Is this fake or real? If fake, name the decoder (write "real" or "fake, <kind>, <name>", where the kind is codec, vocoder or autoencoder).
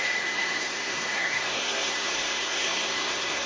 fake, codec, SNAC